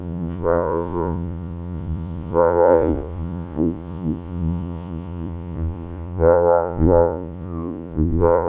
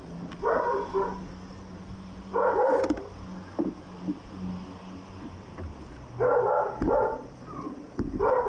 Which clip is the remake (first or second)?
first